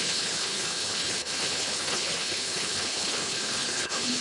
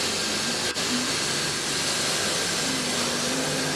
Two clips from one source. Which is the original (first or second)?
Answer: second